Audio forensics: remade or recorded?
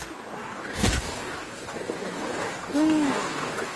remade